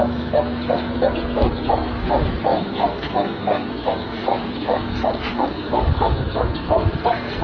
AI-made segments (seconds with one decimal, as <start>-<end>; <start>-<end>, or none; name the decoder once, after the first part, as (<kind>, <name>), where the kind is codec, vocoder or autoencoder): 0.0-7.4 (codec, SNAC)